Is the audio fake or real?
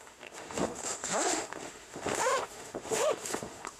fake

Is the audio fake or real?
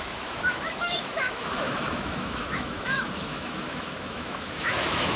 fake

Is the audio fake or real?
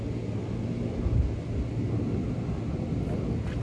real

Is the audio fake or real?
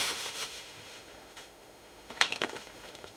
fake